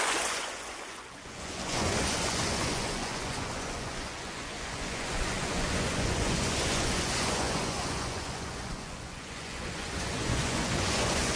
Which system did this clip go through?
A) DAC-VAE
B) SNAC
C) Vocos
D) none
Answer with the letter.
C